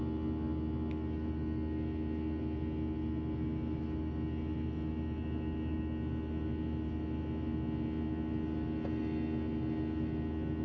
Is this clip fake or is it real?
real